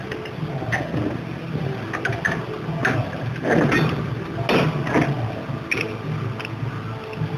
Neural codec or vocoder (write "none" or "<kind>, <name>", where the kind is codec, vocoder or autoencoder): none